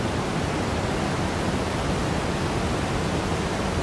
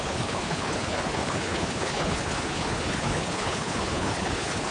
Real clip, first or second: first